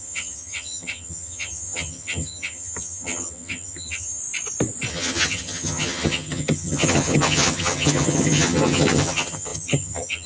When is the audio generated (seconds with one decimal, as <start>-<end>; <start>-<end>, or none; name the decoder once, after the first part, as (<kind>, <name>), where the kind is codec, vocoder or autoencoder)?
0.0-4.2 (vocoder, HiFi-GAN); 4.9-10.3

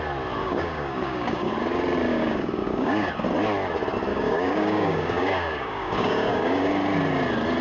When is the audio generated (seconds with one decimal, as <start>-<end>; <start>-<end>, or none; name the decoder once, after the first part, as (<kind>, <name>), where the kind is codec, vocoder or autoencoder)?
0.4-1.5 (codec, DAC); 2.1-3.1; 4.1-6.7